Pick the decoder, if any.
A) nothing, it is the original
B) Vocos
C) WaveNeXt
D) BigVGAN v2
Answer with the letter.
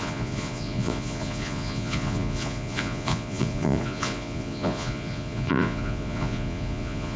B